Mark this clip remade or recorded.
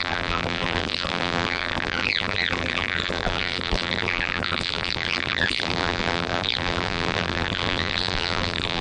remade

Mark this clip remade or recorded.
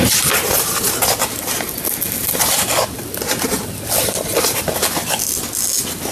recorded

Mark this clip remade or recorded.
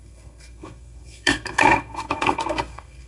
remade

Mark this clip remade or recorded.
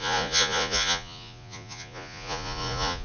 remade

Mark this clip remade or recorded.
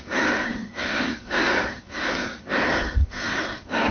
remade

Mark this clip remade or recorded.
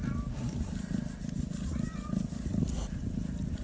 recorded